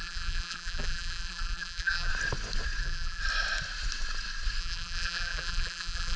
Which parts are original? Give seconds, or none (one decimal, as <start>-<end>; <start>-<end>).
2.1-2.8; 3.2-4.6

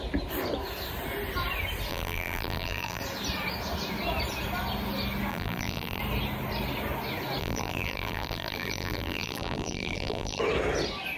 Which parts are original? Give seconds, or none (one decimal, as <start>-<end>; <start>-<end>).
0.0-1.9; 3.0-5.3; 6.0-7.4; 10.4-11.2

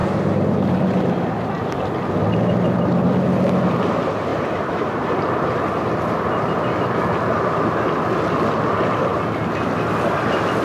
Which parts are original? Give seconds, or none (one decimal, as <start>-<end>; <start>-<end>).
1.9-4.3; 5.6-10.6

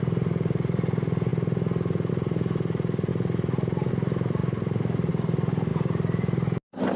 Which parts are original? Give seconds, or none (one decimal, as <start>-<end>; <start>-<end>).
0.0-4.4; 5.1-7.0

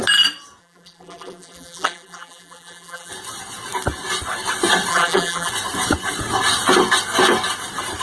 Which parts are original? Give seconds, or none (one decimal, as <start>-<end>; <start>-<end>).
0.0-0.6; 3.1-4.9; 5.5-8.0

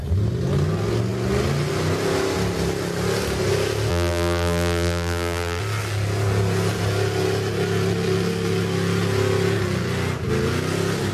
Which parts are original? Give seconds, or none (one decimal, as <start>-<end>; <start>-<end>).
0.0-3.9; 5.6-11.1

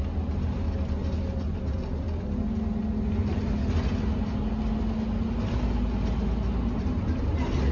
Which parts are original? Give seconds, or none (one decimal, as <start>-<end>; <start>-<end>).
0.0-7.7